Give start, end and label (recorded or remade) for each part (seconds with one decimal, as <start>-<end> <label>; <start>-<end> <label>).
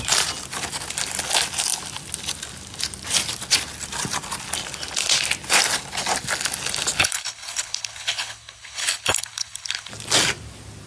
0.0-7.0 recorded; 7.0-9.9 remade; 9.9-10.9 recorded